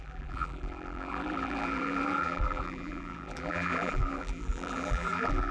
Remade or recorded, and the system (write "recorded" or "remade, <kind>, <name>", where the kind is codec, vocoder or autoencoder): remade, vocoder, BigVGAN v2